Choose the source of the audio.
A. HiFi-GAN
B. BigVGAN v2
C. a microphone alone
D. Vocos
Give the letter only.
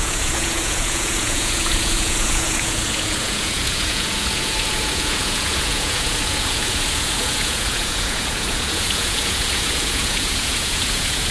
D